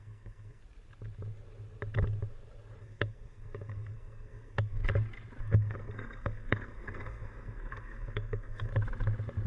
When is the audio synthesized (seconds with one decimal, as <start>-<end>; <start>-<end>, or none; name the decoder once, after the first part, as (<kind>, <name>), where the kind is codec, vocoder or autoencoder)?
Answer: 0.0-0.6 (codec, SNAC); 2.8-4.8; 5.4-8.7